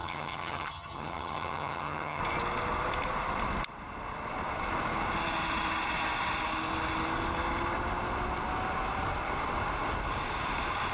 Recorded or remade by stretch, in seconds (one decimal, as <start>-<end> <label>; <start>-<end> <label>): 0.0-2.2 remade; 2.2-10.9 recorded